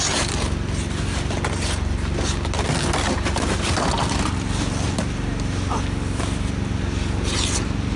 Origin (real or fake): real